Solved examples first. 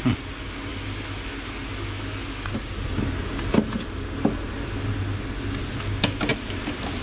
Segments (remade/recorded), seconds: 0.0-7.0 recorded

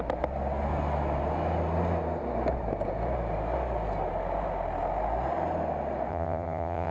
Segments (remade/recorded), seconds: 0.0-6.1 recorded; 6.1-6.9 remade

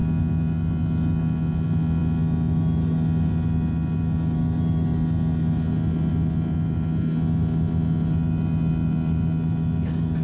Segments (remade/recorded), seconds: 0.0-10.2 recorded